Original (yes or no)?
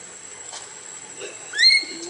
yes